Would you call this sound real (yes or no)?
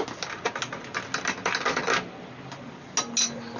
yes